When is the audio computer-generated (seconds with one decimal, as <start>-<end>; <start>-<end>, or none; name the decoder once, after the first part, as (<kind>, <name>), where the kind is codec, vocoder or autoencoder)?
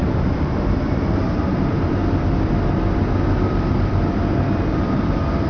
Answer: 1.0-2.0 (vocoder, BigVGAN v2)